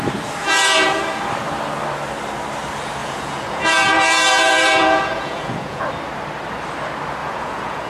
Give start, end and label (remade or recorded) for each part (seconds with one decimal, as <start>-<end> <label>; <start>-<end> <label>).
0.0-0.4 recorded; 0.4-1.0 remade; 1.0-3.0 recorded; 3.0-5.8 remade; 5.8-7.2 recorded; 7.2-7.9 remade